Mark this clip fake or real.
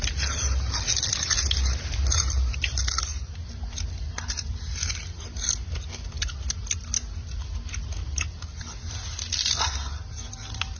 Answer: real